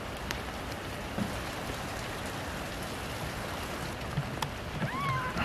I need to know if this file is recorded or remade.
recorded